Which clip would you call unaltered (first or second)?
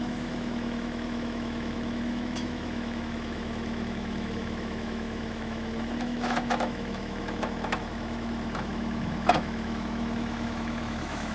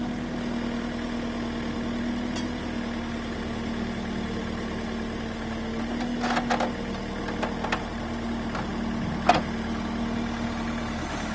second